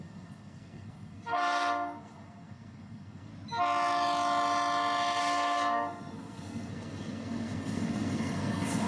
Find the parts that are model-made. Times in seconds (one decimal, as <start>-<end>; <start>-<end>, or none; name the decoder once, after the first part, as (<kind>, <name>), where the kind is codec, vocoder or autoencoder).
0.0-3.3 (codec, SNAC); 5.2-8.9